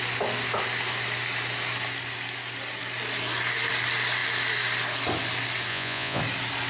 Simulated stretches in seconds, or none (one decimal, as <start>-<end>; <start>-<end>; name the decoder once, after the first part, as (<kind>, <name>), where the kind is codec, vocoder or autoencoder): 5.7-6.2 (vocoder, Vocos)